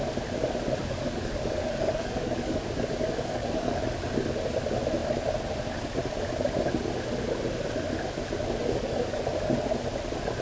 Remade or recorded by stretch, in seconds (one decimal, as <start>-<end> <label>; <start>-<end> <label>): 0.0-0.8 recorded; 0.8-3.8 remade; 3.8-8.6 recorded; 8.6-9.2 remade; 9.2-10.4 recorded